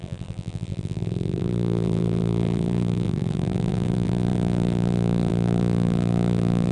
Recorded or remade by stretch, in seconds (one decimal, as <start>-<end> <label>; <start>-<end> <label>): 0.0-6.7 remade